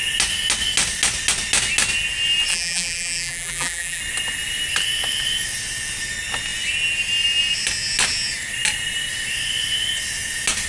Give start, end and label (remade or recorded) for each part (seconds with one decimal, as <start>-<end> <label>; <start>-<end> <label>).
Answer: 0.0-2.5 recorded; 2.5-4.0 remade; 4.0-10.7 recorded